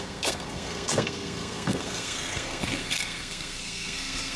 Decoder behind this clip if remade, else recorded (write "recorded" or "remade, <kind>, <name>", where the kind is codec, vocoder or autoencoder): remade, codec, SNAC